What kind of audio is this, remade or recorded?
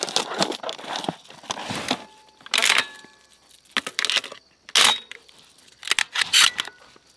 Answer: recorded